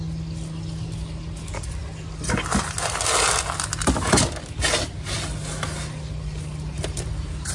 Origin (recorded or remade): recorded